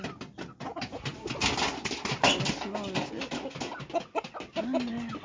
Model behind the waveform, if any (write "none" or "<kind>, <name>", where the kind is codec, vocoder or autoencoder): none